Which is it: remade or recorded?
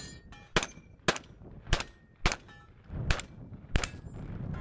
recorded